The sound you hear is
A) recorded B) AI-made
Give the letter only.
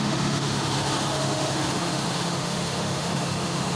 B